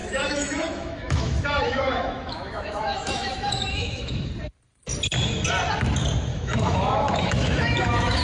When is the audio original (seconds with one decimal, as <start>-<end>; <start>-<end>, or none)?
4.3-6.3

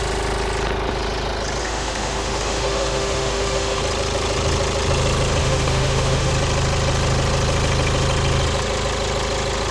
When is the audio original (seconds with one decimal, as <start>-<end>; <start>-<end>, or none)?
0.0-1.6; 3.8-5.4; 6.3-9.7

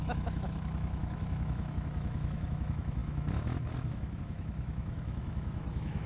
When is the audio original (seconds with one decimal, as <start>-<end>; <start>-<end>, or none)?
none

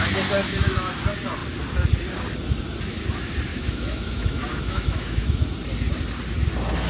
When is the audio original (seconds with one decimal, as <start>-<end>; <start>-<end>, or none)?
0.0-0.4; 1.0-3.5; 5.4-6.9

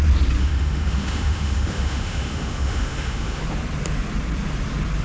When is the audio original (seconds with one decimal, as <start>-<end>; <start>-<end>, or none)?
0.0-0.4; 3.4-5.0

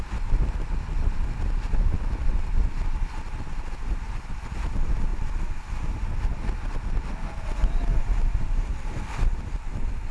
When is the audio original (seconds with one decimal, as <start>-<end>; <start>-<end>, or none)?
0.0-10.1